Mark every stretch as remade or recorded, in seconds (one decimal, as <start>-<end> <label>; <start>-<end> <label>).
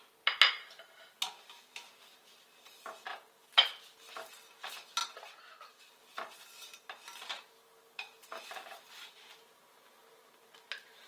0.0-11.1 recorded